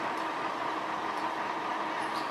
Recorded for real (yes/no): yes